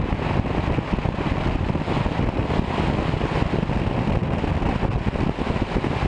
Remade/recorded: recorded